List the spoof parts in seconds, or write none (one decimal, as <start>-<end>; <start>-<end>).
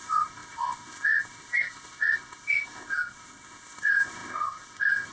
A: 0.0-5.1